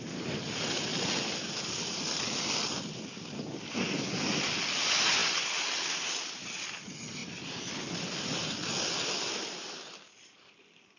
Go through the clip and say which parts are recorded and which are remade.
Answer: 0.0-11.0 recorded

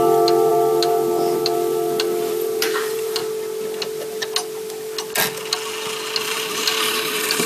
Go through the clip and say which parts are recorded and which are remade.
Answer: 0.0-3.2 remade; 3.2-6.2 recorded; 6.2-7.5 remade

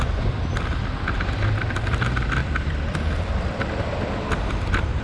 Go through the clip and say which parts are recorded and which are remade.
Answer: 0.0-2.4 recorded; 2.4-4.6 remade; 4.6-5.0 recorded